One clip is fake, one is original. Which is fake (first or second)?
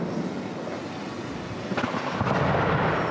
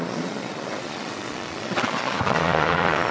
second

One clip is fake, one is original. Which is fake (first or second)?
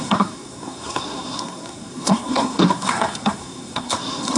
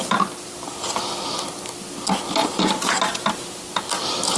first